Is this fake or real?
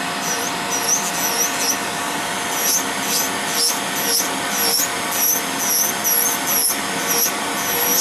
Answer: real